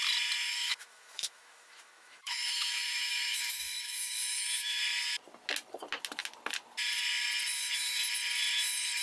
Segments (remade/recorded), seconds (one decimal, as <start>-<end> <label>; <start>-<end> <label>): 0.0-0.4 recorded; 0.4-4.8 remade; 4.8-9.0 recorded